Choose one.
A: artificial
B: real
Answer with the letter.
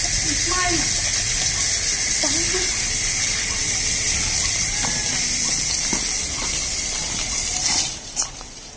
B